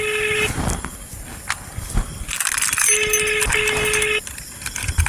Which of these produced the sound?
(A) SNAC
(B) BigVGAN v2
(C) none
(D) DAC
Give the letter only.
C